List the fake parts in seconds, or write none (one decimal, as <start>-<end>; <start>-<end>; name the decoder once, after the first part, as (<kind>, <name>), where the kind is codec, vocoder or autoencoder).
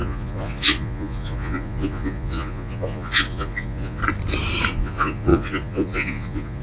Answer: 0.0-4.0 (vocoder, Vocos); 4.7-6.6